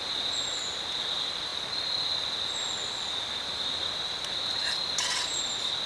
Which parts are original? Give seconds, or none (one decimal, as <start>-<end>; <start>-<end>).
0.0-5.9